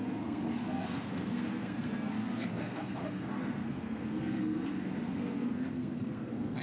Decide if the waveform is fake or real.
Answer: fake